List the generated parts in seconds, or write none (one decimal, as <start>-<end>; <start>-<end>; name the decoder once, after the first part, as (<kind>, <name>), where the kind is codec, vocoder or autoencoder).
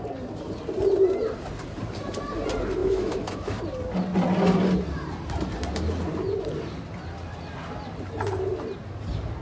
2.8-3.6 (autoencoder, DAC-VAE)